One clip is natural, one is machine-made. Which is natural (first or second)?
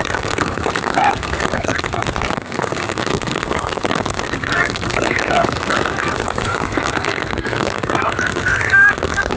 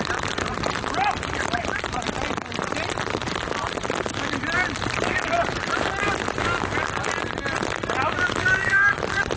second